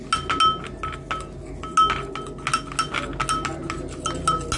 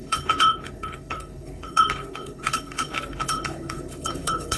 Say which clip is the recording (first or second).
first